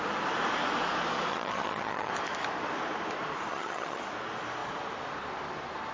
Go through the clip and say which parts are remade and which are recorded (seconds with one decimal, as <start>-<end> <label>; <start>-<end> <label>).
0.0-1.3 recorded; 1.3-2.1 remade; 2.1-3.5 recorded; 3.5-4.0 remade; 4.0-5.9 recorded